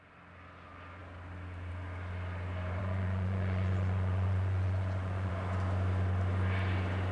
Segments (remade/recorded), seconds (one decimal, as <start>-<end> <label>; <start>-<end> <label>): 0.0-2.8 recorded; 2.8-5.3 remade; 5.3-7.1 recorded